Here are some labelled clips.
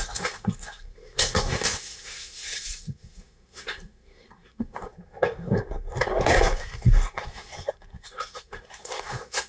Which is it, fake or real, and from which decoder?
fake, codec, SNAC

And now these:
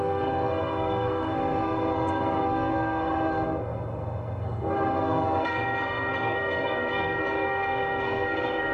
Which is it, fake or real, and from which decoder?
fake, codec, SNAC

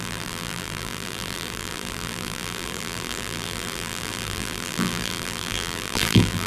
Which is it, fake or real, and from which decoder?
fake, vocoder, BigVGAN v2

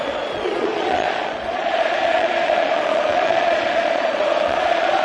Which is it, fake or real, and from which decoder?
fake, vocoder, Vocos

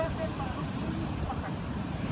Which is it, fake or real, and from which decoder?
fake, vocoder, BigVGAN v2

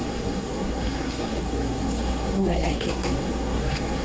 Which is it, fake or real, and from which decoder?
fake, codec, SNAC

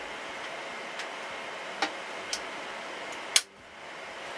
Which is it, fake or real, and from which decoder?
real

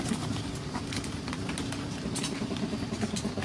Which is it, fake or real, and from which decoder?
real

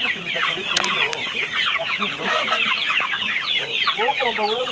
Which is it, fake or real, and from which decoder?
fake, vocoder, Vocos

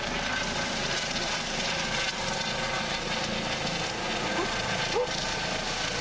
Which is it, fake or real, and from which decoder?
real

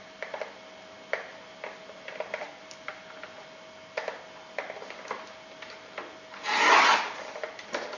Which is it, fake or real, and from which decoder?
real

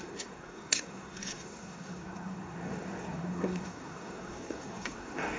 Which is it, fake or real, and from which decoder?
fake, codec, SNAC